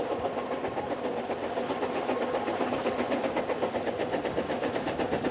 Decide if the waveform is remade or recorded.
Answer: recorded